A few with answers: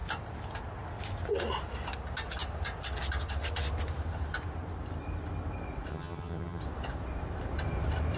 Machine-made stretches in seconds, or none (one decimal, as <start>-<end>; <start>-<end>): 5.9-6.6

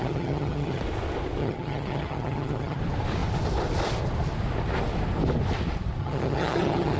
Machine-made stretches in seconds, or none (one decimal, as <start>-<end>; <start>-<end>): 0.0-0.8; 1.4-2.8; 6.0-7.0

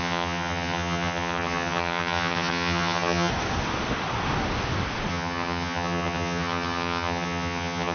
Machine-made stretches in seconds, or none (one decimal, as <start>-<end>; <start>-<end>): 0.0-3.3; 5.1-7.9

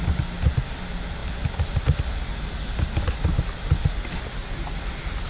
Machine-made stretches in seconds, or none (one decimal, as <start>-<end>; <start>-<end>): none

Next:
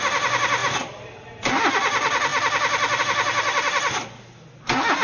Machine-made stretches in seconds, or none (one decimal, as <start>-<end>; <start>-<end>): none

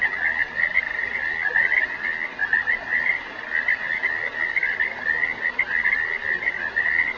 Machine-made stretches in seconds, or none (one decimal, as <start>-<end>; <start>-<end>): none